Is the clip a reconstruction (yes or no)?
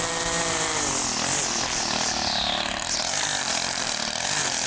no